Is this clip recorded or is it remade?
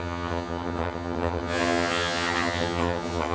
remade